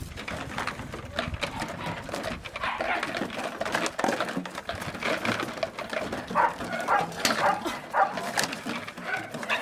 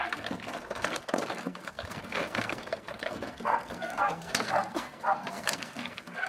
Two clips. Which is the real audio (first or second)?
first